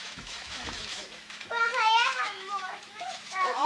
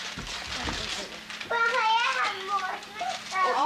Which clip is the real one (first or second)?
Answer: second